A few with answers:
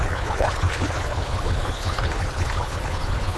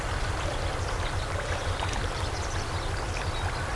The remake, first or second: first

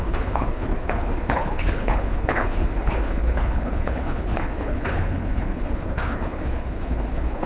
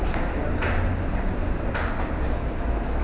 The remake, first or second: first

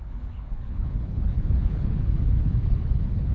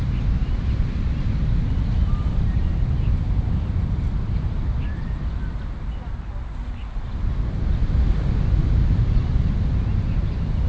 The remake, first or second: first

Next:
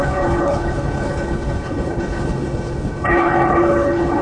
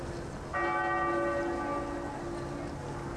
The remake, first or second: first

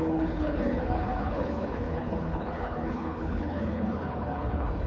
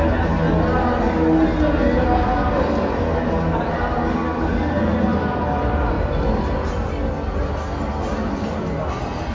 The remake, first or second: first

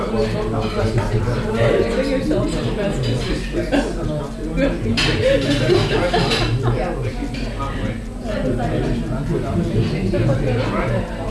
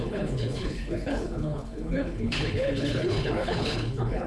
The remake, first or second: second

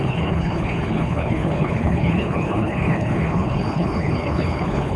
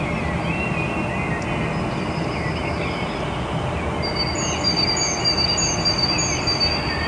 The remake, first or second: first